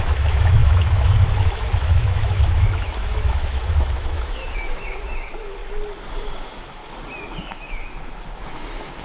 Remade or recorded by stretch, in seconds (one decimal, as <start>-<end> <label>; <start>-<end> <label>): 0.0-5.6 remade; 5.6-6.1 recorded; 6.1-6.8 remade; 6.8-7.4 recorded; 7.4-9.0 remade